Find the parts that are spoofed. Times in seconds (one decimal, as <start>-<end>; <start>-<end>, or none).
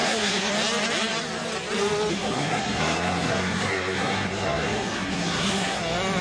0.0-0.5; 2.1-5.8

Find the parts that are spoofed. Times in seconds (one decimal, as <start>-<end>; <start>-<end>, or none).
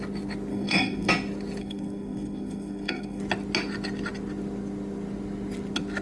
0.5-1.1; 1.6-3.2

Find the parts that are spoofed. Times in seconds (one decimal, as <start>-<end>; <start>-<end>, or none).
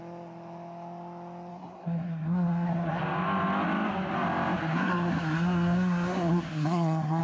1.5-3.0; 4.7-7.2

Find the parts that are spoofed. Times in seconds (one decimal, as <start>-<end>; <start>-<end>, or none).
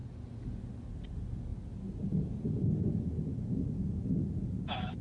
none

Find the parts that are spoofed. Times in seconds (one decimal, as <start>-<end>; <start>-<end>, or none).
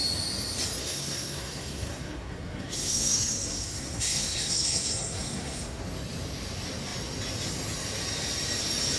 0.8-5.8